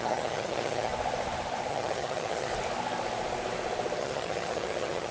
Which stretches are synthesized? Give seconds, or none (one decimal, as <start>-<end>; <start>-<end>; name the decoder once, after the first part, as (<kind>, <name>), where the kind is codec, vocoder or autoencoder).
0.0-0.9 (vocoder, HiFi-GAN); 1.7-2.5; 4.0-5.1